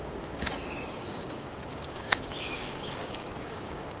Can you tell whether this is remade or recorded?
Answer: remade